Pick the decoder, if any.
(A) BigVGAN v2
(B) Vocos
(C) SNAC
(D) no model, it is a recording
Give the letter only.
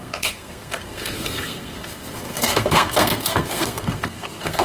C